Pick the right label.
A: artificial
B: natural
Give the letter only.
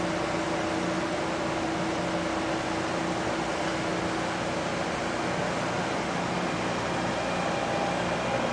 B